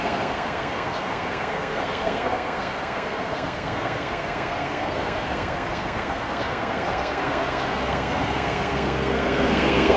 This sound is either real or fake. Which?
fake